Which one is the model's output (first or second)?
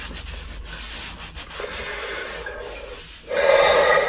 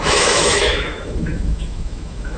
second